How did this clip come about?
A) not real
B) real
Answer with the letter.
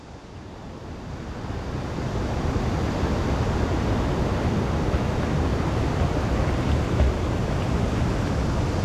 B